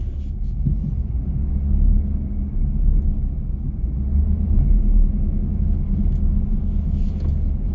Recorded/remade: recorded